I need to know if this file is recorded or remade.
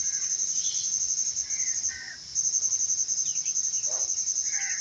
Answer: recorded